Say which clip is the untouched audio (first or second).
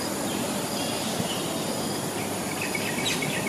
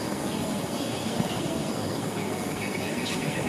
first